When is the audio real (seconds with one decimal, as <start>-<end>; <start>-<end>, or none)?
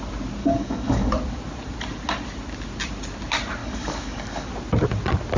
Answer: 0.0-0.4; 1.1-3.6; 4.5-5.4